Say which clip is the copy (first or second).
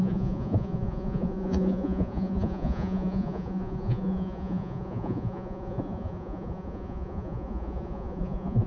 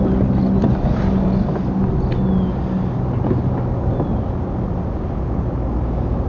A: first